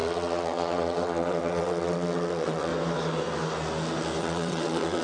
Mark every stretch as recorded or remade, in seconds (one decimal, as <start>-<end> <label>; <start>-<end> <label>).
0.0-2.7 remade; 2.7-4.2 recorded; 4.2-5.0 remade